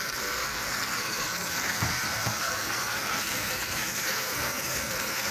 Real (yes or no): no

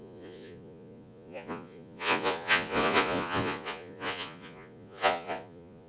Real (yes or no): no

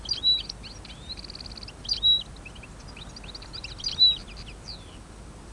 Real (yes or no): yes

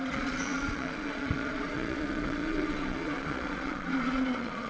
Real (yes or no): no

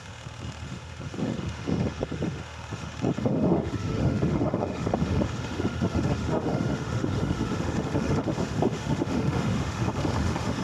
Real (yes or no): no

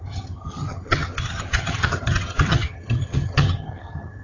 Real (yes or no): no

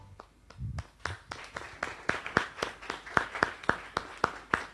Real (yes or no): yes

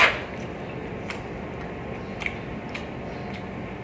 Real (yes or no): yes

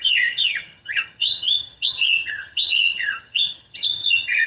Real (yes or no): no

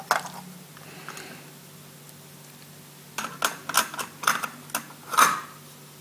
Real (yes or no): yes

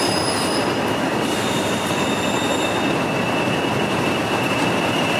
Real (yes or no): yes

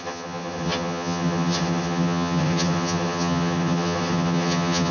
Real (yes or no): no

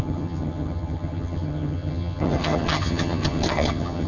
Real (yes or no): no